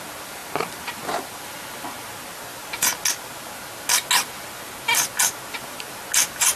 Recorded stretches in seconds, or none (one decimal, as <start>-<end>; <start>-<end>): 0.0-6.5